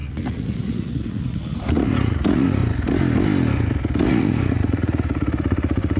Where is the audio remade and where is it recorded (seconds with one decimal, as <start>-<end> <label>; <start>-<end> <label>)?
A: 0.0-2.6 remade; 2.6-4.0 recorded; 4.0-6.0 remade